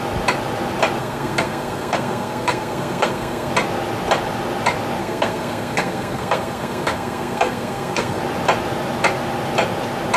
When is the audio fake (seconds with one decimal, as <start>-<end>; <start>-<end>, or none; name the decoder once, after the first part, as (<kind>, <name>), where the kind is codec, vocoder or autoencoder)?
1.0-3.5 (codec, SNAC); 5.0-8.2